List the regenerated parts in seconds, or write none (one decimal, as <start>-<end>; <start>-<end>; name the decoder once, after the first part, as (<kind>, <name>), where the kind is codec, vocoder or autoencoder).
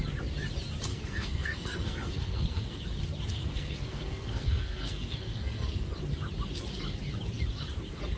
0.9-2.8 (codec, SNAC); 3.3-5.9